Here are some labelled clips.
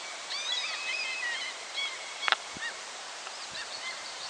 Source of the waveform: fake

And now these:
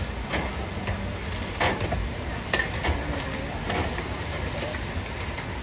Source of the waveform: real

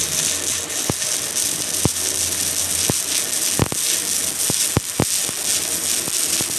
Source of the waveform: real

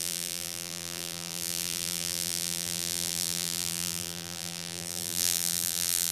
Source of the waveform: fake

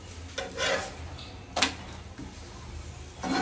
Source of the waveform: real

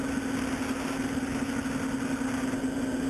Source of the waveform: real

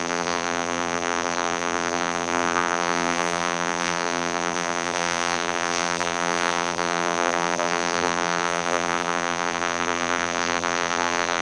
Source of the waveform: fake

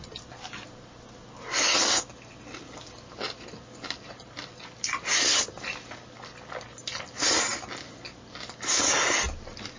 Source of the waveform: real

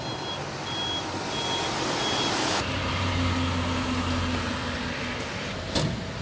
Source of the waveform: real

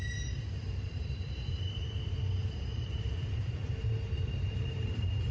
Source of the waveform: fake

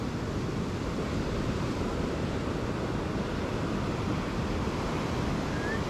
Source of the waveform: real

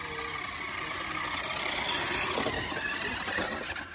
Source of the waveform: real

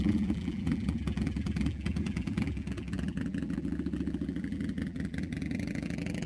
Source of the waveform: fake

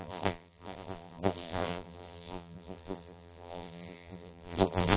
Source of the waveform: fake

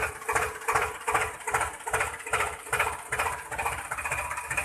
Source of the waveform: fake